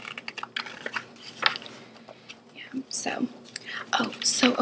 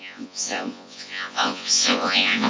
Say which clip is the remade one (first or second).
second